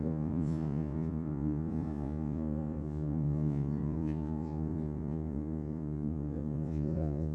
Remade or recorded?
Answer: remade